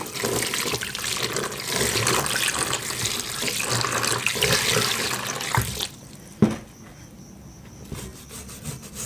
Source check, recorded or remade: recorded